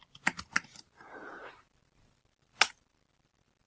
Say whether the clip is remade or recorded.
recorded